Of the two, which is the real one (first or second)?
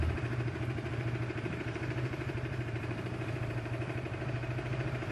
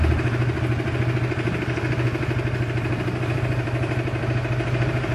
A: second